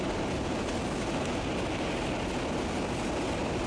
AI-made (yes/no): no